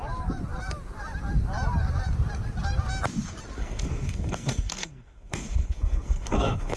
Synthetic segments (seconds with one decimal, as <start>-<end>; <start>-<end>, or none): 3.6-6.8